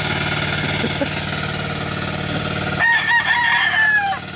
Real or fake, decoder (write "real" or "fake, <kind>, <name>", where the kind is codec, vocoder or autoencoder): real